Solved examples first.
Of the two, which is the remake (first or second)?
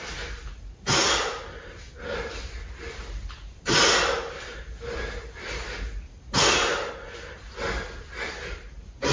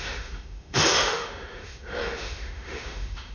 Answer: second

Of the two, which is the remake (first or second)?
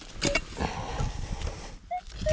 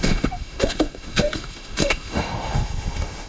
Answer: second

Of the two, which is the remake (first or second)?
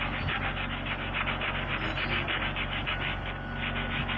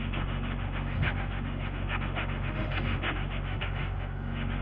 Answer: second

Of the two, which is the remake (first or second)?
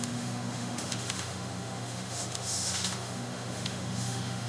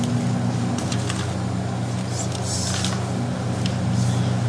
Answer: first